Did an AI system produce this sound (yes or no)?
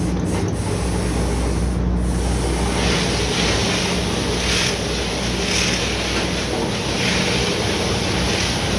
no